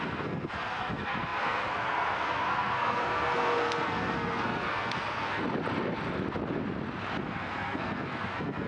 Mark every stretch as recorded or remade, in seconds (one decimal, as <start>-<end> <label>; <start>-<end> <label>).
0.0-5.4 remade; 5.4-7.2 recorded; 7.2-8.7 remade